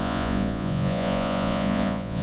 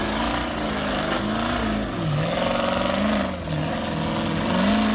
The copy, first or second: first